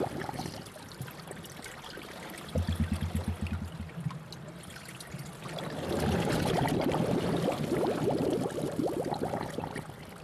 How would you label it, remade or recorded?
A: recorded